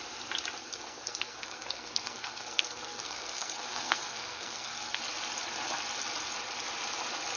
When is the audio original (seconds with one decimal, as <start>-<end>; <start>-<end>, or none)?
0.0-0.6; 5.0-7.4